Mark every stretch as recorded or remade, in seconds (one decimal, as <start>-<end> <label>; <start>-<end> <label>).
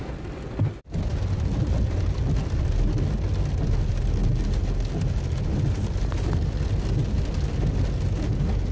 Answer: 0.0-8.7 recorded